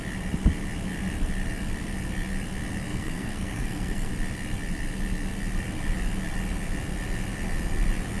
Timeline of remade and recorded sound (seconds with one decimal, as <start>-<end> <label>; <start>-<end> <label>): 0.0-2.9 recorded; 2.9-4.1 remade; 4.1-8.2 recorded